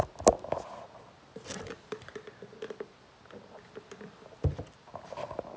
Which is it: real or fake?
real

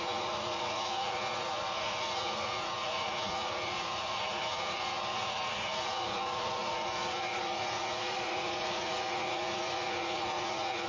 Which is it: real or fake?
fake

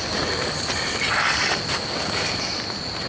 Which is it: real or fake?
real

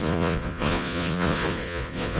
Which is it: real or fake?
fake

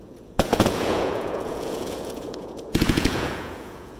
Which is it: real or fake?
fake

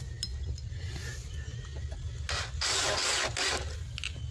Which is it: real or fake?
real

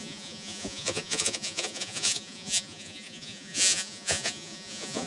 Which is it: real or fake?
fake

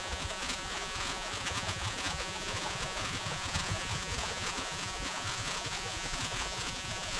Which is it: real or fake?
fake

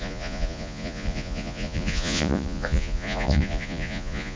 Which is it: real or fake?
fake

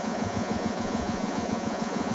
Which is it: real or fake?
fake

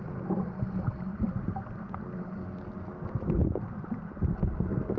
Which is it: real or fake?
real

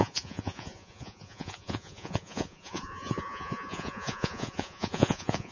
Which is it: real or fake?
fake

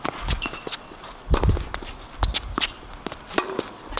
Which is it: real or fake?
real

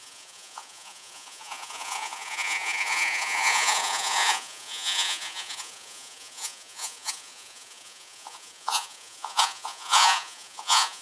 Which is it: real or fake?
fake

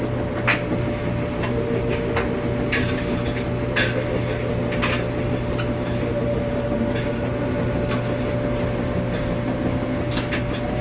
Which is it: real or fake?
real